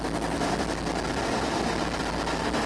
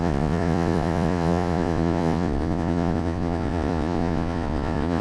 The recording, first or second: first